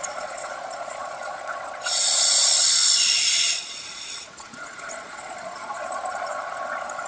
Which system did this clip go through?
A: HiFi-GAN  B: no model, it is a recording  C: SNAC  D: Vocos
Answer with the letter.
D